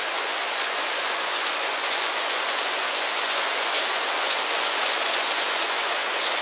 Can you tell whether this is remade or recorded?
remade